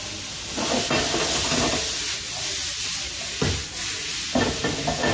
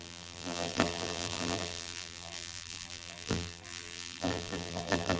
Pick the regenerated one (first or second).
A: second